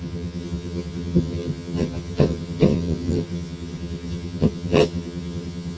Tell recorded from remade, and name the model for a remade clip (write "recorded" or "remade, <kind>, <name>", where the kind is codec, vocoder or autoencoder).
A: remade, vocoder, HiFi-GAN